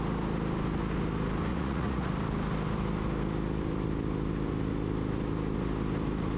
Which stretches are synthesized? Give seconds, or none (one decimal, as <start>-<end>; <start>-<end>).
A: 1.5-2.1